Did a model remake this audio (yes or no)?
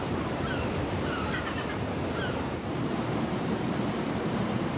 yes